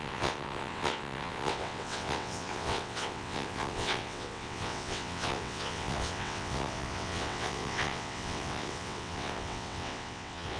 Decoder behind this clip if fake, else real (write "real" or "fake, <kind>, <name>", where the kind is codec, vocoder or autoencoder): fake, vocoder, WaveNeXt